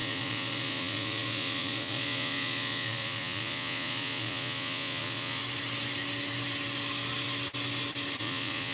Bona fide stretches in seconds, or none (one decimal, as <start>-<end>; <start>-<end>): 5.4-8.2